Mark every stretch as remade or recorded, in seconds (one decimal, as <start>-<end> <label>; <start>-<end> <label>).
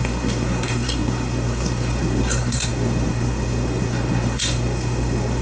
0.0-5.4 remade